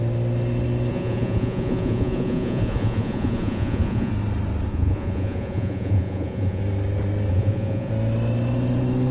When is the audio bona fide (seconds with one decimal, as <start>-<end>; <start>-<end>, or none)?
0.0-0.9; 4.1-4.7; 6.6-7.3; 7.9-9.1